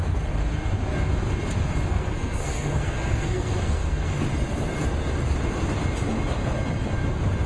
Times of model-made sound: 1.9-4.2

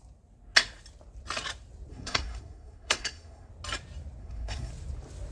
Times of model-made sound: 1.9-3.5; 4.2-4.7

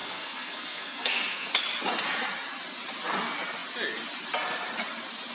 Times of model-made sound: 0.0-1.5

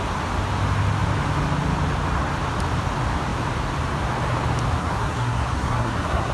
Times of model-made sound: 4.8-6.3

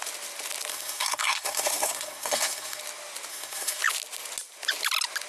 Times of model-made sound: 0.7-2.8; 3.3-3.8

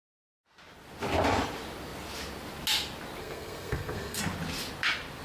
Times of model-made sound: 3.2-4.2

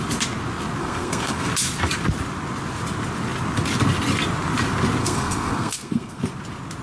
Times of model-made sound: 0.8-1.5; 5.0-6.2